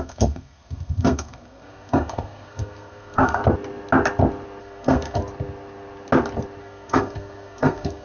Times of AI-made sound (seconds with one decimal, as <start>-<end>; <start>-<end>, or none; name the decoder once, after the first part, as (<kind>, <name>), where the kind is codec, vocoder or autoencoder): 0.0-3.4 (codec, SNAC); 4.6-5.2; 6.6-8.0